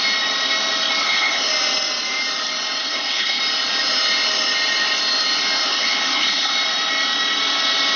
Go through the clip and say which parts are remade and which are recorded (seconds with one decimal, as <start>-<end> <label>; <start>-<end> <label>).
0.0-1.0 recorded; 1.0-1.5 remade; 1.5-2.8 recorded; 2.8-3.4 remade; 3.4-5.7 recorded; 5.7-6.5 remade; 6.5-8.0 recorded